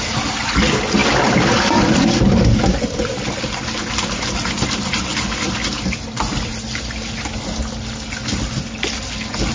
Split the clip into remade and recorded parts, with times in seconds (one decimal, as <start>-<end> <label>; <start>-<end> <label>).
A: 0.0-9.5 recorded